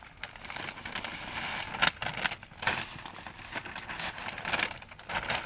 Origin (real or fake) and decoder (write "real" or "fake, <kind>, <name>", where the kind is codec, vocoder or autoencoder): real